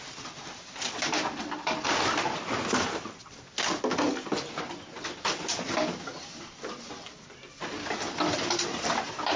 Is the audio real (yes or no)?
yes